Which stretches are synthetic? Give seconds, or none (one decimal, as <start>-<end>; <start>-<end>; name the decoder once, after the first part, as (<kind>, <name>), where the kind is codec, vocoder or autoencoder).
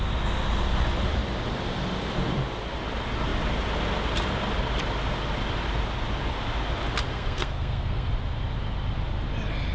7.1-8.1 (codec, SNAC)